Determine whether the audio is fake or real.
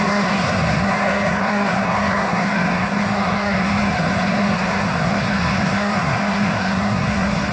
fake